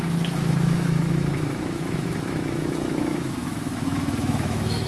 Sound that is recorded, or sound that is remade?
remade